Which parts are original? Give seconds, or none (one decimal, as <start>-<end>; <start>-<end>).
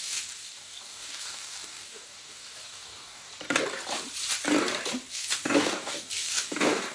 3.3-5.1